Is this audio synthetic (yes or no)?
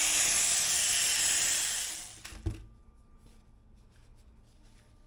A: no